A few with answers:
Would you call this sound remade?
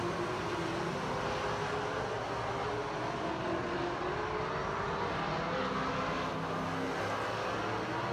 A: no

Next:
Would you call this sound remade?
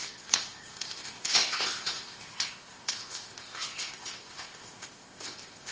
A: yes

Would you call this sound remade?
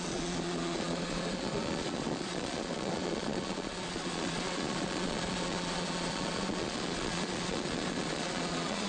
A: yes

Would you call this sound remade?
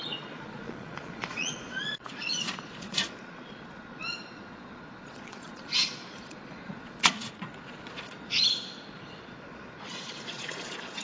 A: yes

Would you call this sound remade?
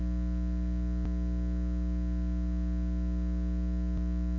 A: no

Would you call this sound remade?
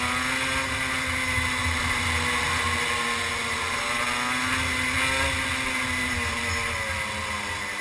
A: no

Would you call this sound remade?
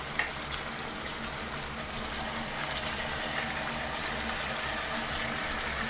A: no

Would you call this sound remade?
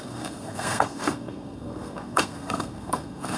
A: yes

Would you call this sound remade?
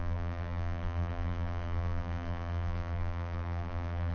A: yes